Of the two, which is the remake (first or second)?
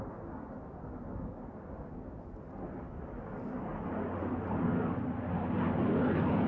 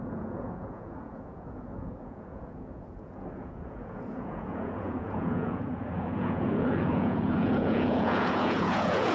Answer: second